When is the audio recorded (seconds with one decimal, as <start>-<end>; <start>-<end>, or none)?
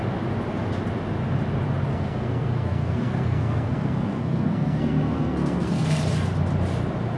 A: 0.0-1.9; 6.0-7.2